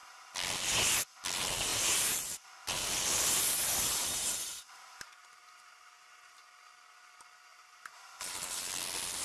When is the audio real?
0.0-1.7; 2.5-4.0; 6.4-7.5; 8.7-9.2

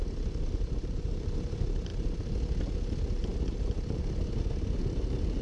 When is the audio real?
0.0-5.4

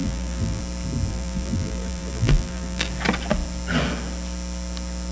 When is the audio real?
0.6-1.1; 2.9-5.1

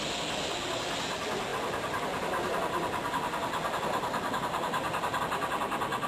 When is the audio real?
0.0-6.1

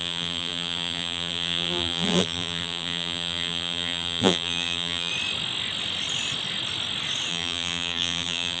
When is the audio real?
5.1-7.3

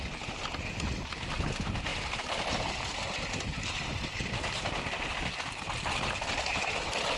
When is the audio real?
0.0-1.9; 5.5-7.2

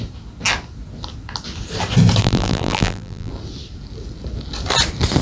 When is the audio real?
0.0-2.2; 3.3-5.2